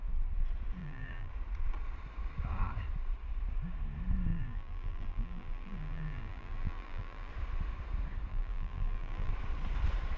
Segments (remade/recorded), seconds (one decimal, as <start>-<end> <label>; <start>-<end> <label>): 0.0-0.8 recorded; 0.8-1.3 remade; 1.3-4.3 recorded; 4.3-7.3 remade; 7.3-8.3 recorded; 8.3-9.3 remade; 9.3-10.2 recorded